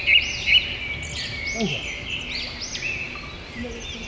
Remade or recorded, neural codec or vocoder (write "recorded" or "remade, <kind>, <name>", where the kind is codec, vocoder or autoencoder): recorded